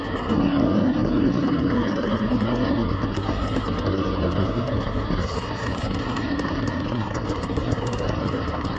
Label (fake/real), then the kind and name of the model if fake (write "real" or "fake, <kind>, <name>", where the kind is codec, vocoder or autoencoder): fake, codec, SNAC